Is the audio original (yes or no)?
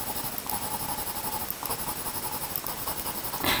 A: yes